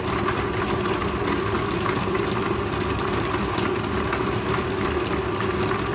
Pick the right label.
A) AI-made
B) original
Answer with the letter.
B